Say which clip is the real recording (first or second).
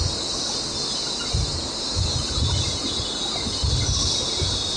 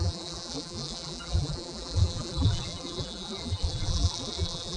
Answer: first